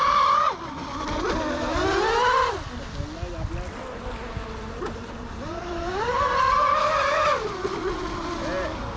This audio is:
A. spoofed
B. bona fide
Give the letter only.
B